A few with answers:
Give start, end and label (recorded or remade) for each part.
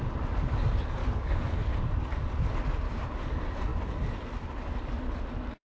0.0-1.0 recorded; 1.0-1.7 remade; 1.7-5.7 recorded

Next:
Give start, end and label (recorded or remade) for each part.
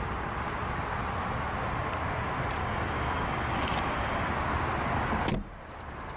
0.0-2.6 recorded; 2.6-4.3 remade; 4.3-6.2 recorded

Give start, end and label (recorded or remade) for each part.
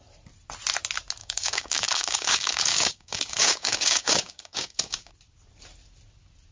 0.0-1.2 recorded; 1.2-5.1 remade; 5.1-6.5 recorded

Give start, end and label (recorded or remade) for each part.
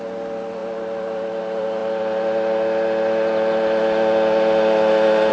0.0-5.3 recorded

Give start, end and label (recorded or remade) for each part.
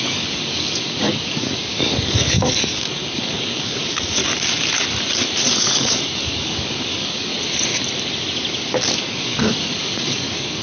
0.0-4.2 remade; 4.2-5.5 recorded; 5.5-7.3 remade; 7.3-8.9 recorded; 8.9-10.6 remade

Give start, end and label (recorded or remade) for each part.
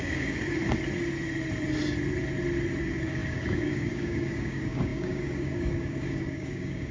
0.0-0.6 remade; 0.6-2.8 recorded; 2.8-6.9 remade